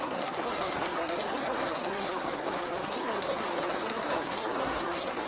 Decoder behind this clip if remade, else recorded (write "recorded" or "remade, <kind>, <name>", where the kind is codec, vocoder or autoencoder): remade, codec, SNAC